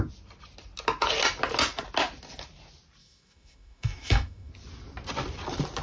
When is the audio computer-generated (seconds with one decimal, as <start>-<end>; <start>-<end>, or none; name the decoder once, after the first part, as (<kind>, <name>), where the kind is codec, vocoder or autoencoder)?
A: 3.0-4.5 (autoencoder, DAC-VAE)